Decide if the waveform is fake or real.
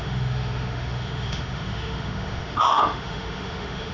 fake